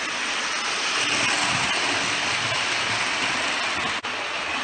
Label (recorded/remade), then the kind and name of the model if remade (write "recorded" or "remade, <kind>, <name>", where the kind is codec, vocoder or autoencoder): recorded